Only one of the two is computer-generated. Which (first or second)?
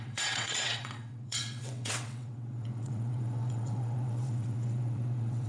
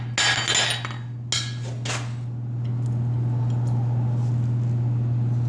first